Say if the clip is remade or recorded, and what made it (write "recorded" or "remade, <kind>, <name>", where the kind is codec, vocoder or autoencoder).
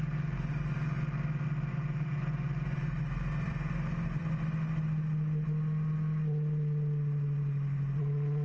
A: recorded